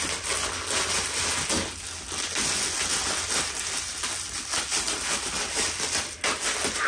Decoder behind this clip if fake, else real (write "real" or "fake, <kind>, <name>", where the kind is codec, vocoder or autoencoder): real